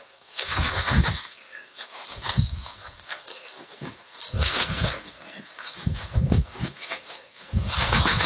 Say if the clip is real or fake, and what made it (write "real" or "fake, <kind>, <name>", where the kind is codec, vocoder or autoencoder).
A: fake, codec, SNAC